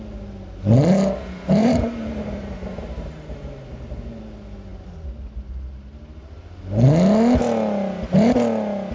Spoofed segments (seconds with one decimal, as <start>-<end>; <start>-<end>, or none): 1.6-4.2